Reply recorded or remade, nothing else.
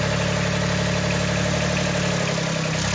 recorded